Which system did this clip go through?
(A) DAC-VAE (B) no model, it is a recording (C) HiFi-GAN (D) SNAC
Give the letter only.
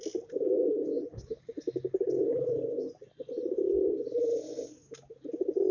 B